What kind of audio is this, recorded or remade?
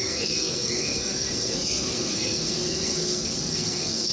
remade